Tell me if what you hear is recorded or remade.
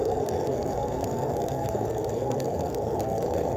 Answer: remade